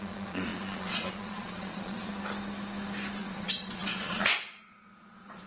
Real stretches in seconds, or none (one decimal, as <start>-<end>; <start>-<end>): 2.1-3.2

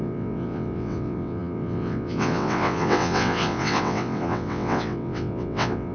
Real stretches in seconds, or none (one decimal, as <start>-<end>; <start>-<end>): none

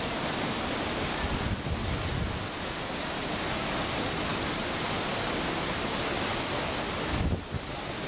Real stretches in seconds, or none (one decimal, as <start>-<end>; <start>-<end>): 0.0-8.1

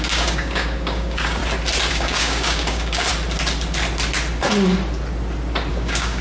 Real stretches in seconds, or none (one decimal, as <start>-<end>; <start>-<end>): 1.4-1.9; 3.1-5.7